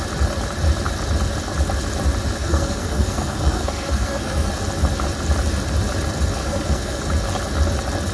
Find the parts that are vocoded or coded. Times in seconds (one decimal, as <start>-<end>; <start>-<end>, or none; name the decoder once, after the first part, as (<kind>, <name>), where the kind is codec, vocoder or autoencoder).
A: 2.4-4.5 (codec, SNAC); 6.4-7.0